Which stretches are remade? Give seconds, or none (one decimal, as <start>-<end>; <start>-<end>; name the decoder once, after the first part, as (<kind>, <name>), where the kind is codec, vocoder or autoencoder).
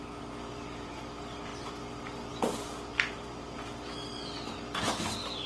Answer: none